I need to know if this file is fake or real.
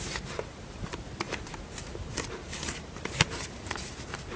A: fake